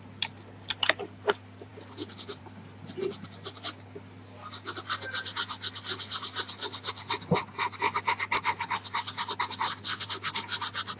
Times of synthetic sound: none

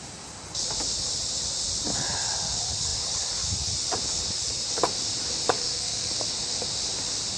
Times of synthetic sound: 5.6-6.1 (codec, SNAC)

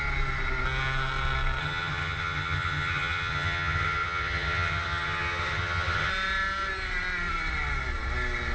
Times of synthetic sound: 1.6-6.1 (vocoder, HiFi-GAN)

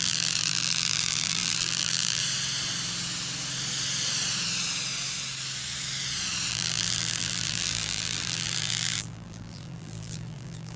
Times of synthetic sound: 0.0-2.2 (vocoder, BigVGAN v2); 6.5-10.8

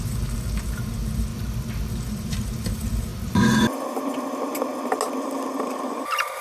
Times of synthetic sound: 0.0-1.3 (vocoder, BigVGAN v2); 1.9-3.1; 5.2-6.4

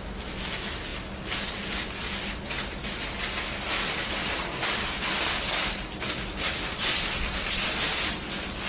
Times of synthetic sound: 0.9-2.6 (vocoder, BigVGAN v2); 4.2-7.3